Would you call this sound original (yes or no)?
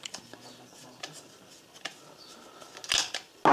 yes